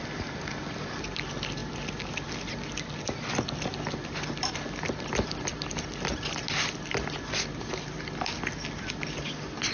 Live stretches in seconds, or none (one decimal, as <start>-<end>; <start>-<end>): 0.0-9.7